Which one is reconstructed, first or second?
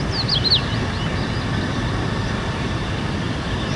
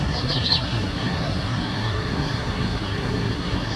second